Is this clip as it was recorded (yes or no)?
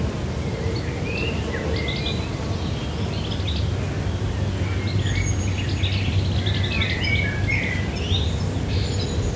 yes